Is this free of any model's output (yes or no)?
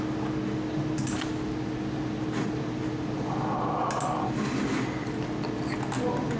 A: yes